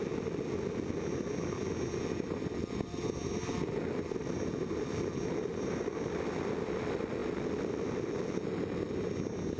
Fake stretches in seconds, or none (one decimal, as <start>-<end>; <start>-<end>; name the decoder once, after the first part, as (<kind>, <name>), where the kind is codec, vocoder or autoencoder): none